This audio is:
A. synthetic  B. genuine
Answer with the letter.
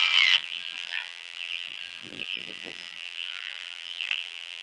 A